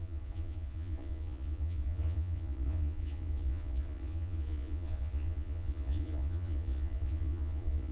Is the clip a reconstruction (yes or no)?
yes